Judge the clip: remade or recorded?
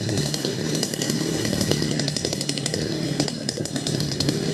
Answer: remade